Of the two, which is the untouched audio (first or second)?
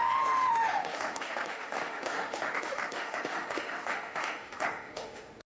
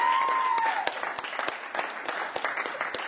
second